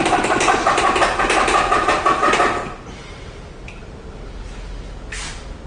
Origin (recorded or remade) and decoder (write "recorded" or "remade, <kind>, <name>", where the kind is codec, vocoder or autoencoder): recorded